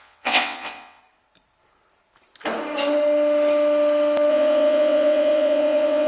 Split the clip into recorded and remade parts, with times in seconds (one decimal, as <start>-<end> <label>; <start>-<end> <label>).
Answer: 0.0-1.0 remade; 1.0-4.3 recorded; 4.3-6.1 remade